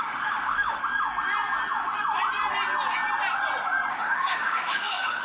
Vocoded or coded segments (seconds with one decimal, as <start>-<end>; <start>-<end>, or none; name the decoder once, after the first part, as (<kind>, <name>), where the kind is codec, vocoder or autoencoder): 0.0-0.8 (autoencoder, DAC-VAE); 3.9-5.2